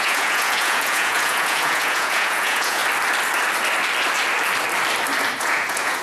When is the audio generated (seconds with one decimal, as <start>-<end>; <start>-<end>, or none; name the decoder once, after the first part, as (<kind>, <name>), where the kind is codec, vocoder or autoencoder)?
0.0-2.8 (vocoder, Vocos); 5.4-6.0